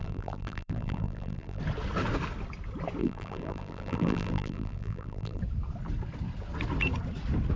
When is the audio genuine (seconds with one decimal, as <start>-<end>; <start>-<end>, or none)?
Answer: 1.6-3.0; 5.4-7.6